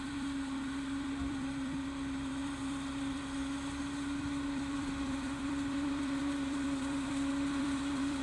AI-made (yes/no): yes